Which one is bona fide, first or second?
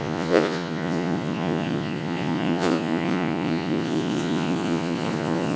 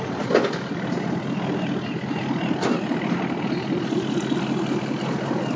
second